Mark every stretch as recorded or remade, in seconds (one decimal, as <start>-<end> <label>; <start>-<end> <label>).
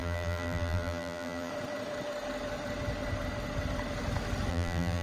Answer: 0.0-1.5 remade; 1.5-4.5 recorded; 4.5-5.0 remade